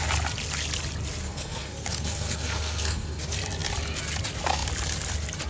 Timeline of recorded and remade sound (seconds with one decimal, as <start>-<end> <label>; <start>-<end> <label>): 0.0-1.2 recorded; 1.2-3.2 remade; 3.2-5.5 recorded